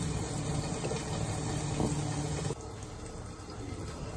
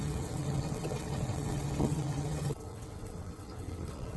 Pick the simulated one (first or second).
second